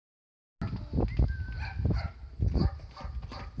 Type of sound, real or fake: real